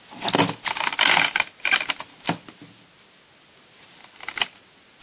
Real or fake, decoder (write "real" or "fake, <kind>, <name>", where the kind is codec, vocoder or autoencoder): real